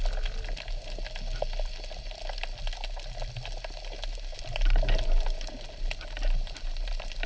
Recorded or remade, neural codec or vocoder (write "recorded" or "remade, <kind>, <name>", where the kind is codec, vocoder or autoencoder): recorded